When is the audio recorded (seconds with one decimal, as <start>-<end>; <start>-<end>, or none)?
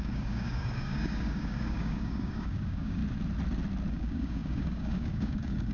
3.0-3.9